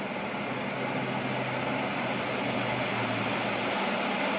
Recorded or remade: recorded